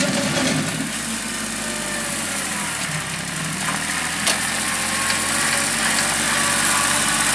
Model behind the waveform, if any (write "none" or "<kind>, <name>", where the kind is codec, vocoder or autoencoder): vocoder, BigVGAN v2